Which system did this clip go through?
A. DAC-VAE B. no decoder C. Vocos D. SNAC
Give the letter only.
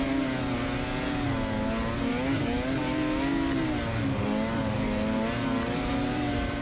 B